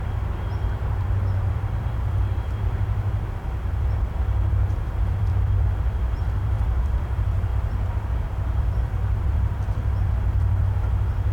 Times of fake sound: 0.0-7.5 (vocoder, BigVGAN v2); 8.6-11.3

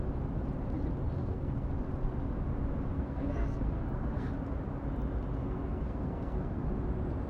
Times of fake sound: 1.2-1.7 (codec, SNAC); 2.9-4.3; 5.4-6.7

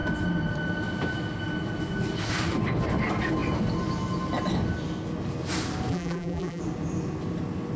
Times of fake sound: 5.9-6.6 (vocoder, BigVGAN v2)

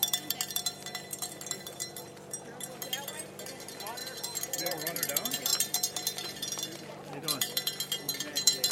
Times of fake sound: none

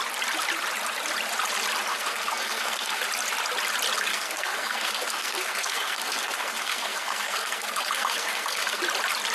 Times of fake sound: 1.9-3.0 (codec, SNAC); 4.1-8.8

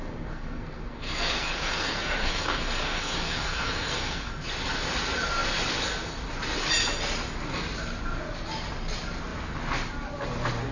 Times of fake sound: 0.0-4.3 (codec, SNAC)